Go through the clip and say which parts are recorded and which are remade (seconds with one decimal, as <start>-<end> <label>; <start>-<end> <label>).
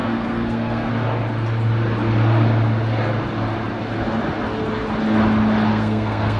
0.0-0.9 remade; 0.9-5.7 recorded; 5.7-6.4 remade